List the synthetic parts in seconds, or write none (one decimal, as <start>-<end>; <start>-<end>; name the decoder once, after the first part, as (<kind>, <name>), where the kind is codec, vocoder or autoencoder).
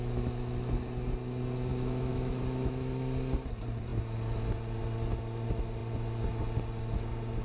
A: 1.7-2.4 (autoencoder, DAC-VAE)